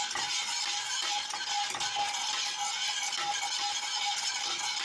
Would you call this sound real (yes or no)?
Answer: yes